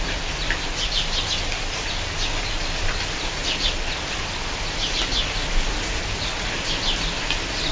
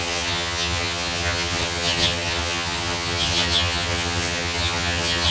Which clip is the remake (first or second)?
second